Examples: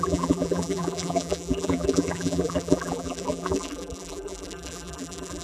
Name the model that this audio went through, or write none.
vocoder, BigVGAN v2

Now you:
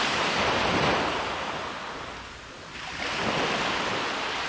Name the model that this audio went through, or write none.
none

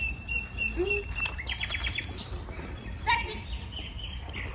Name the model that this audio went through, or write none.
vocoder, BigVGAN v2